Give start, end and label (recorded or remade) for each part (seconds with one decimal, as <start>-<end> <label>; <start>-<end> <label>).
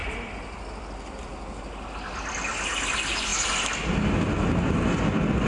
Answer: 0.0-5.5 recorded